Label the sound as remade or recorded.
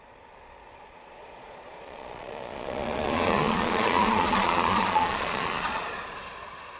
remade